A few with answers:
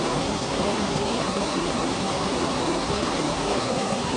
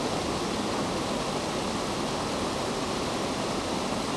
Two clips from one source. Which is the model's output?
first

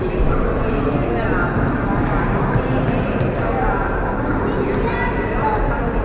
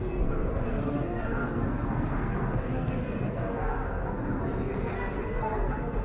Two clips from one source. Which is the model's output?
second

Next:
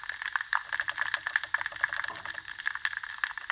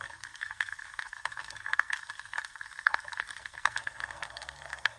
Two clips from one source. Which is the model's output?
second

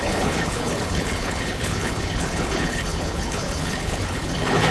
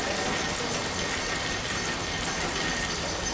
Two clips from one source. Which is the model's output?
first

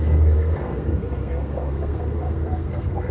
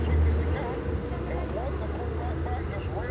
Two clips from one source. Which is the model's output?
first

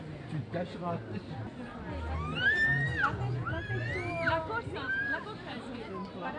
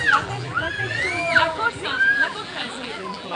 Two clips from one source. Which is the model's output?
second